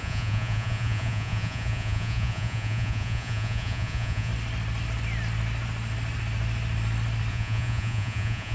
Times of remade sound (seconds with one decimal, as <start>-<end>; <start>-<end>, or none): 0.0-4.3; 7.3-8.5